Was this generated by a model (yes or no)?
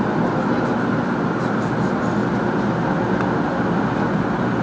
no